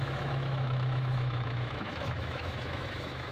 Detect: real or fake fake